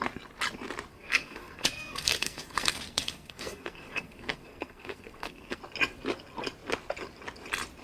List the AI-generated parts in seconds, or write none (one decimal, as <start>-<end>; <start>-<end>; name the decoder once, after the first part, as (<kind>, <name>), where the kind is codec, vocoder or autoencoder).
0.9-5.6 (codec, SNAC)